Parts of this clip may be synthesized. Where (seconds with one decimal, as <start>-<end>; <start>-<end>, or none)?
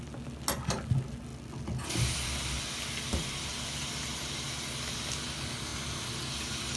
none